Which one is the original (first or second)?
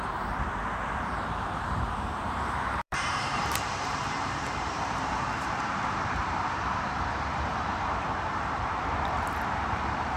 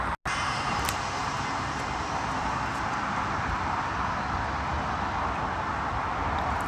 second